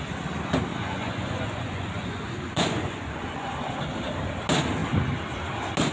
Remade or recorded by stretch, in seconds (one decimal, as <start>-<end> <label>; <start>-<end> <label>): 0.0-0.7 recorded; 0.7-3.7 remade; 3.7-5.9 recorded